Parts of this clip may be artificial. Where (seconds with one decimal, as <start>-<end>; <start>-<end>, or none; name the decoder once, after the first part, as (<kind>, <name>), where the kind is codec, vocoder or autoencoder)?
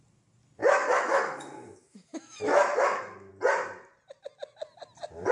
0.6-3.3 (autoencoder, DAC-VAE)